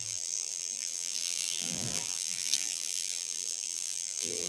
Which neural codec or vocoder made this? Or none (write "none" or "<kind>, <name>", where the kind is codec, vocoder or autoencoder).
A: vocoder, BigVGAN v2